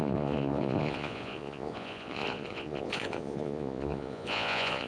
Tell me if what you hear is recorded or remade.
remade